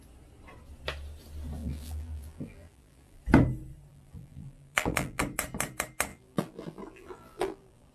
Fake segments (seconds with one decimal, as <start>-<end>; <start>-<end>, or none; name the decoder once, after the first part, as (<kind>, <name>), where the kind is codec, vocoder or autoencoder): 1.6-3.2 (vocoder, BigVGAN v2); 3.9-5.2; 6.1-7.9